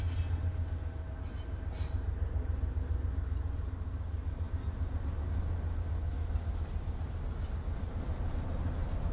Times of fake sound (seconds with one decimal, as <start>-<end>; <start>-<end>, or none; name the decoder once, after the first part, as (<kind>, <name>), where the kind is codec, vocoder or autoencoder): none